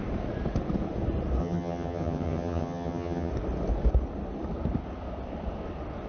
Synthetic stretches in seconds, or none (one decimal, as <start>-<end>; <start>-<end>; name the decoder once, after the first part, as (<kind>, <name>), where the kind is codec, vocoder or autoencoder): 1.4-3.3 (vocoder, HiFi-GAN)